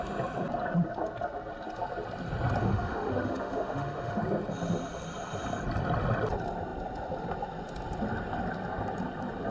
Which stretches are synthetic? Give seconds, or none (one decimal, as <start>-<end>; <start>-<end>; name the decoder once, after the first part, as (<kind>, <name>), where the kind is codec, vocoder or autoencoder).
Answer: 2.6-4.2 (autoencoder, DAC-VAE)